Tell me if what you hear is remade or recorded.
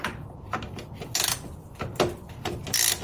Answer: recorded